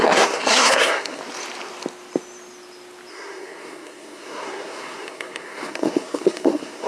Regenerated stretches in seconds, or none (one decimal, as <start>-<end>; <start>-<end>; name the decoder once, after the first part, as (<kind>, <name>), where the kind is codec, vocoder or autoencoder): 0.0-1.2 (codec, SNAC); 3.1-6.9